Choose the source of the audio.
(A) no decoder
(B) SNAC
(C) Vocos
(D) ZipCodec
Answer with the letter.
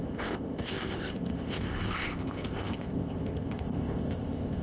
D